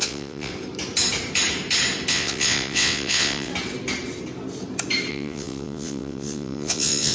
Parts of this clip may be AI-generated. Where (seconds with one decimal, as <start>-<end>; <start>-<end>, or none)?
0.0-0.5; 2.1-3.5; 5.1-7.1